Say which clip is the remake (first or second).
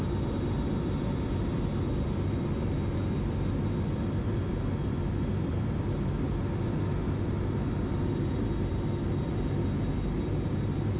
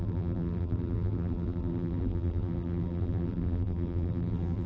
second